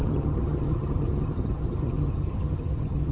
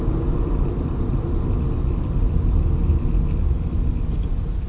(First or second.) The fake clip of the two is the first